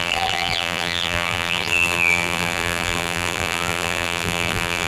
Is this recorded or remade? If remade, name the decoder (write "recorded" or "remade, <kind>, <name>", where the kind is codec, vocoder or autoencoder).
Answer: remade, vocoder, BigVGAN v2